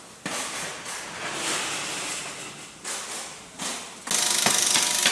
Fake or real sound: real